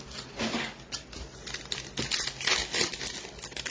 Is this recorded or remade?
recorded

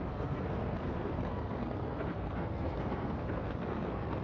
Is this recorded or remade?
remade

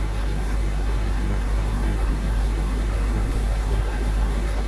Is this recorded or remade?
remade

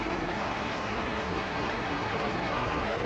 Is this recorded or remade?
remade